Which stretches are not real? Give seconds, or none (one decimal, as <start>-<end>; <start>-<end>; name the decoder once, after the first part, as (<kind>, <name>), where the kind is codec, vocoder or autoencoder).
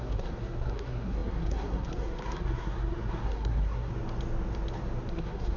0.0-3.9 (codec, SNAC); 5.1-5.6